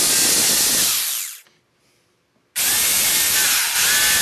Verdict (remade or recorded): recorded